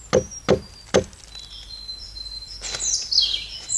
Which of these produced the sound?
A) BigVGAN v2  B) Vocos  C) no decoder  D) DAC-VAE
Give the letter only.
C